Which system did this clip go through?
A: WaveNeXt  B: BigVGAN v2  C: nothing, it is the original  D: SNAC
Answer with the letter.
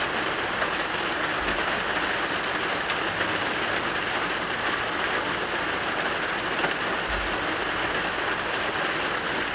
C